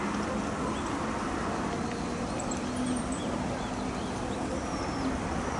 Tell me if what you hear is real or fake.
real